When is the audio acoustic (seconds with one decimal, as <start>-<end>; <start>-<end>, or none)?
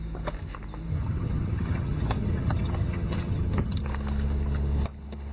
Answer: 0.0-0.9; 3.8-5.3